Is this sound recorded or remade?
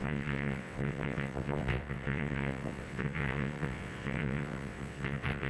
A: remade